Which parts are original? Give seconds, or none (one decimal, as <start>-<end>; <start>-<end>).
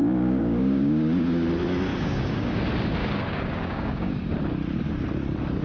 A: 1.5-1.9; 2.6-3.0; 4.2-5.6